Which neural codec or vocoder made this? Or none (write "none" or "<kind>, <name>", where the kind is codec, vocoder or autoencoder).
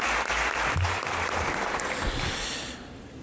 none